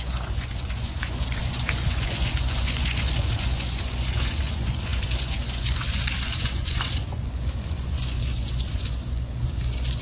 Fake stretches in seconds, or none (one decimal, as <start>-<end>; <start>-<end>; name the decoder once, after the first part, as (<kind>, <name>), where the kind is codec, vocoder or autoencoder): 0.0-10.0 (vocoder, Vocos)